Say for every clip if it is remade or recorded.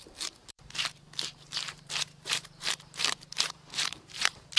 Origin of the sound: remade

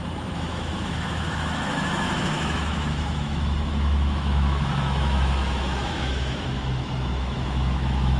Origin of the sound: remade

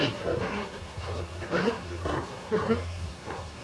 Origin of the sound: remade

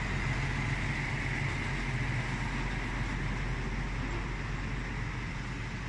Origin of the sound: recorded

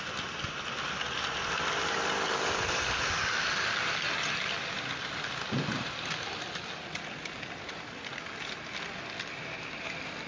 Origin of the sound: recorded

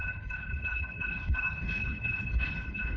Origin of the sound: remade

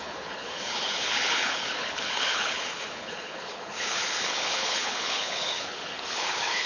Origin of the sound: remade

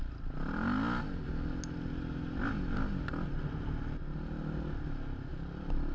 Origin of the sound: recorded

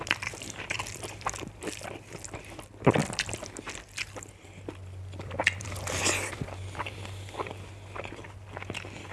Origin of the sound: remade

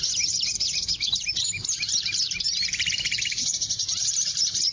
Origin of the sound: remade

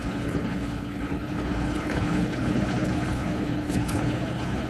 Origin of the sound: remade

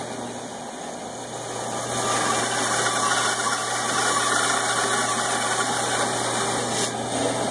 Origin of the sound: recorded